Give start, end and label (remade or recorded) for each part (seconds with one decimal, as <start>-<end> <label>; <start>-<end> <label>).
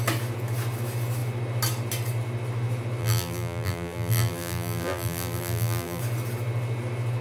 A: 0.0-3.0 recorded; 3.0-6.0 remade; 6.0-7.2 recorded